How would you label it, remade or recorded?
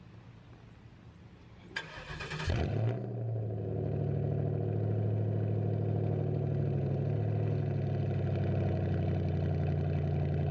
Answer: recorded